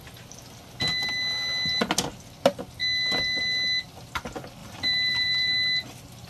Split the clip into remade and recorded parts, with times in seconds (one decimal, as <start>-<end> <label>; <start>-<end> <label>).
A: 0.0-4.6 recorded; 4.6-5.5 remade; 5.5-6.3 recorded